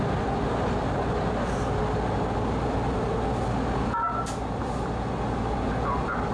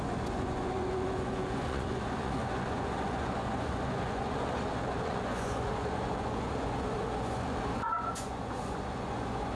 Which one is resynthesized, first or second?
second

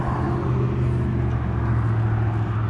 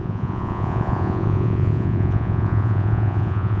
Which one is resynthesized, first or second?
second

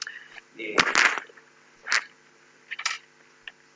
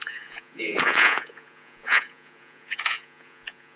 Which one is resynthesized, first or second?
second